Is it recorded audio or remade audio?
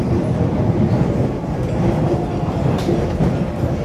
remade